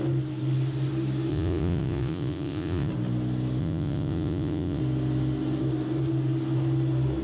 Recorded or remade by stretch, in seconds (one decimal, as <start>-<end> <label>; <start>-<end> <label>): 0.0-1.3 recorded; 1.3-2.9 remade; 2.9-3.6 recorded; 3.6-4.8 remade; 4.8-7.2 recorded